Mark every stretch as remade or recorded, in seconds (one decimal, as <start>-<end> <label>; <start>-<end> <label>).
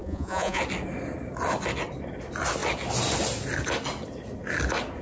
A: 0.0-0.6 remade; 0.6-5.0 recorded